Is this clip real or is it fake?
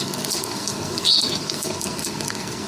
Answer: fake